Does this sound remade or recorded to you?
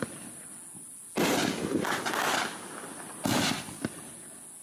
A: recorded